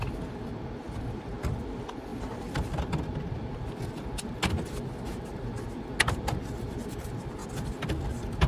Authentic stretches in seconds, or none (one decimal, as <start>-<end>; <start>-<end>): 0.0-8.5